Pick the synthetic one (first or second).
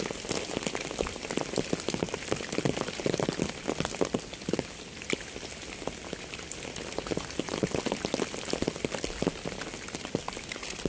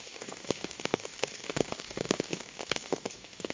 second